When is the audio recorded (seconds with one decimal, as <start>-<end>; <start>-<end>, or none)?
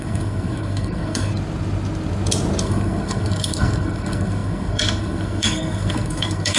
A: 1.3-2.6